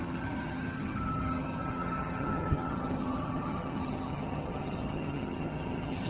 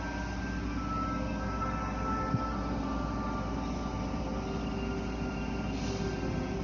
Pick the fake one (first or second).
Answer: first